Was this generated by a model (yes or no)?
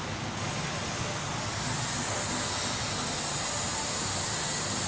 no